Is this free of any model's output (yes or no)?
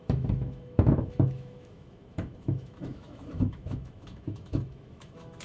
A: no